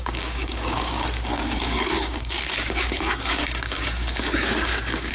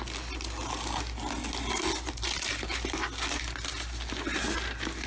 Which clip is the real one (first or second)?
second